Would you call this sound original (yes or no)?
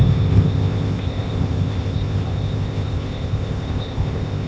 no